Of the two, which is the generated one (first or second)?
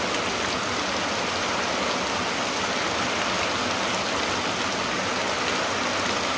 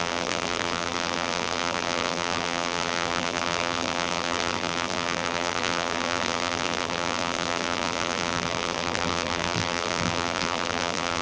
second